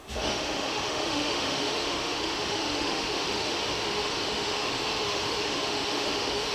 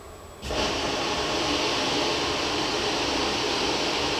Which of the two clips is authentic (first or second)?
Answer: second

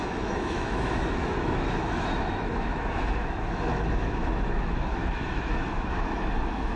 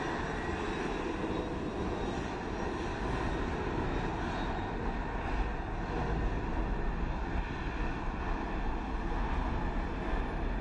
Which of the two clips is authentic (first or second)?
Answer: second